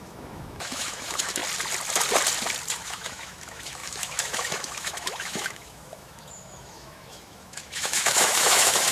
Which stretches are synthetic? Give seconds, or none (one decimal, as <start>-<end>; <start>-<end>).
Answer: 0.0-1.4; 2.7-8.9